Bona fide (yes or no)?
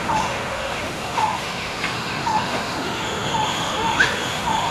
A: no